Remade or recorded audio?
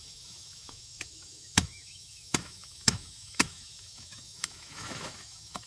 remade